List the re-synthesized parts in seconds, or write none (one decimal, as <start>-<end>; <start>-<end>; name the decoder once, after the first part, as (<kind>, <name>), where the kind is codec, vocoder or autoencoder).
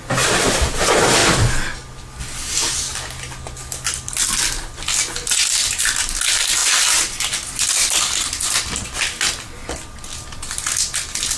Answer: none